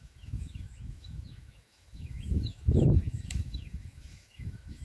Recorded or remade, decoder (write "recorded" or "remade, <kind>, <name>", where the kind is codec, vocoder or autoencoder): remade, autoencoder, DAC-VAE